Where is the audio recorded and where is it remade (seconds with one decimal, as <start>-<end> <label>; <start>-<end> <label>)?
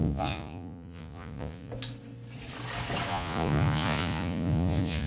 0.0-1.7 remade; 1.7-3.1 recorded; 3.1-5.1 remade